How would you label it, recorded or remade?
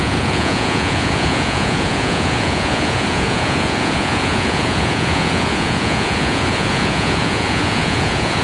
remade